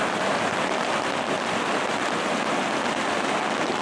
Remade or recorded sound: recorded